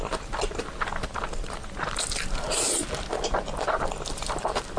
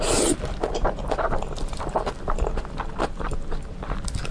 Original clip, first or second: first